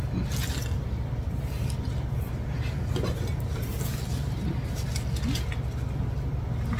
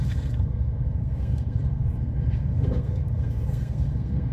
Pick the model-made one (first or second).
second